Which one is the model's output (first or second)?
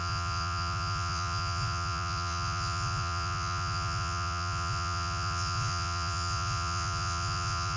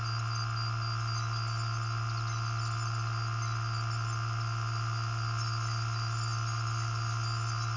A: first